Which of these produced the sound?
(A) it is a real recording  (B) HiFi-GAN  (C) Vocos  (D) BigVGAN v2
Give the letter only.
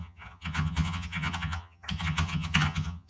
B